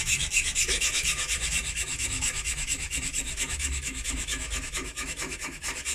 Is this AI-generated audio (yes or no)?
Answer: yes